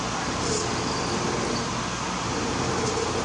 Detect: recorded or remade recorded